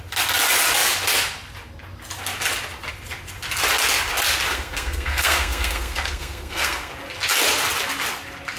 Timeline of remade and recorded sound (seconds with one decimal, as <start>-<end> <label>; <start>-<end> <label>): 0.0-4.5 recorded; 4.5-6.9 remade; 6.9-8.6 recorded